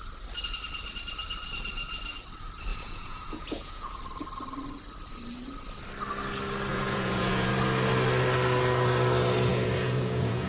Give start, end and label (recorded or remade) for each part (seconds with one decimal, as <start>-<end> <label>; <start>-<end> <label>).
0.0-2.7 recorded; 2.7-4.0 remade; 4.0-6.7 recorded; 6.7-7.5 remade; 7.5-9.5 recorded; 9.5-10.5 remade